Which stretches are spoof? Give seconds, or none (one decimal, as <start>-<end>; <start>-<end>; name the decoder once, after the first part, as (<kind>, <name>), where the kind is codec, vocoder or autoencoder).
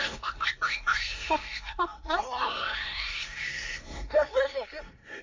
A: 0.0-5.2 (codec, SNAC)